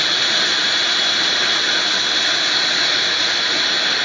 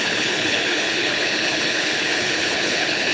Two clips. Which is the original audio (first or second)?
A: first